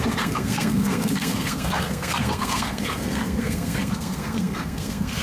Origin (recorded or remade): remade